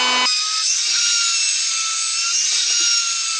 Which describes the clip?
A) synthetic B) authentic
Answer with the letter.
B